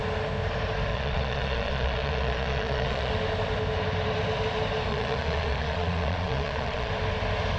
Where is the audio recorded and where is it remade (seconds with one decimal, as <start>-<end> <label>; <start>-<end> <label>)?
0.0-0.9 recorded; 0.9-3.1 remade; 3.1-4.9 recorded; 4.9-6.9 remade; 6.9-7.6 recorded